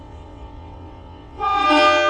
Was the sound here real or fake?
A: fake